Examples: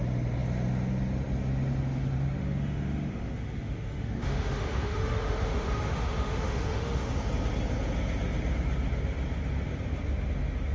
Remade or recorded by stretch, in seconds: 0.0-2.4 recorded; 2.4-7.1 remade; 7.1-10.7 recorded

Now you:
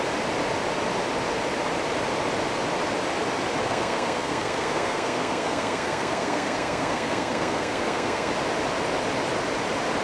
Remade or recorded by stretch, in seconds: 0.0-3.6 recorded; 3.6-8.3 remade; 8.3-10.0 recorded

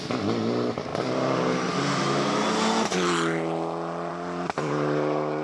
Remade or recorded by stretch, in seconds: 0.0-5.4 recorded